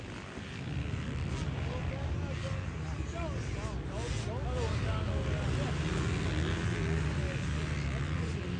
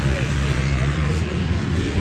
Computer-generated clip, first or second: second